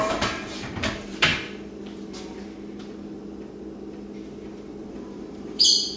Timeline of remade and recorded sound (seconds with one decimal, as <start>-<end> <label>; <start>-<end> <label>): 0.0-1.3 remade; 1.3-4.9 recorded; 4.9-6.0 remade